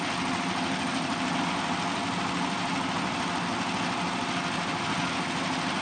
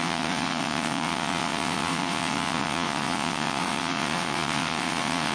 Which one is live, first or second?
first